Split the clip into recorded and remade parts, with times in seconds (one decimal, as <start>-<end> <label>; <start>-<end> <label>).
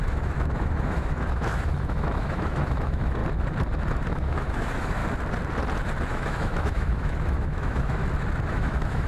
0.0-3.2 remade; 3.2-3.9 recorded; 3.9-5.0 remade; 5.0-6.1 recorded; 6.1-8.0 remade; 8.0-8.5 recorded; 8.5-9.1 remade